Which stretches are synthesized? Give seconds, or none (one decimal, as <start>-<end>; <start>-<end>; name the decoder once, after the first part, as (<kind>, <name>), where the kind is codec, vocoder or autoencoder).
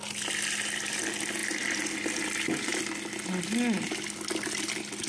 none